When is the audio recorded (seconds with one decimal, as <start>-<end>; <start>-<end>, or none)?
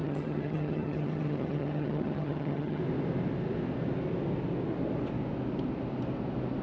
2.8-6.6